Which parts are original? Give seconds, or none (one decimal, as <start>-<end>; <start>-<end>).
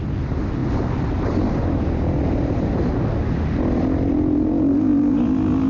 0.0-5.7